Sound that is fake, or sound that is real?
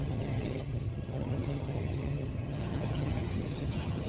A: fake